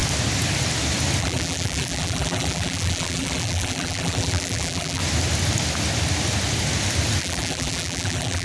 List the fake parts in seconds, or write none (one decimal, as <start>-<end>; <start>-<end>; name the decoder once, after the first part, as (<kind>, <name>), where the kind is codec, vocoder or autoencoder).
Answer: 1.2-5.0 (vocoder, BigVGAN v2); 7.2-8.4